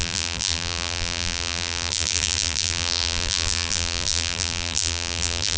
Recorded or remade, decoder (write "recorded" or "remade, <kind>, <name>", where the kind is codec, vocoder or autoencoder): remade, vocoder, BigVGAN v2